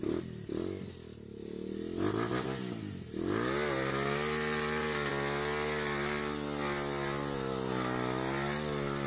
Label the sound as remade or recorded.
recorded